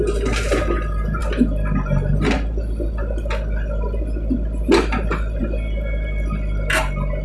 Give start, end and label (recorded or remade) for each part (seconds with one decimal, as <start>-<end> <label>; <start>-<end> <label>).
0.0-7.2 recorded